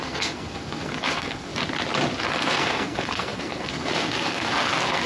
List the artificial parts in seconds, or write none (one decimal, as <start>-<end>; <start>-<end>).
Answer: 0.0-1.5; 2.2-5.1